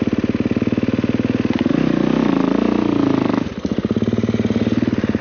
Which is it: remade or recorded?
recorded